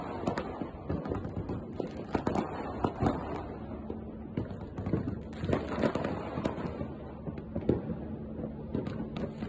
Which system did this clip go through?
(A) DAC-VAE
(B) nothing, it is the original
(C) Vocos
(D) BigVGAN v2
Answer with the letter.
B